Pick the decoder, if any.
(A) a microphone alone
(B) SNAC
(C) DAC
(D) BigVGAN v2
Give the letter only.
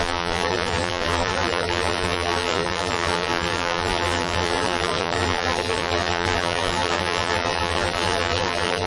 D